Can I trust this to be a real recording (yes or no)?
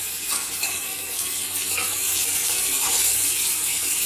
no